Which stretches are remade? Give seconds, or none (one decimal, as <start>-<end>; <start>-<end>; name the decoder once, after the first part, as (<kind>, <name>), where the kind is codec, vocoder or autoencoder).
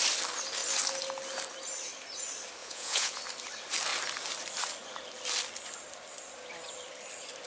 2.6-3.2 (vocoder, Vocos)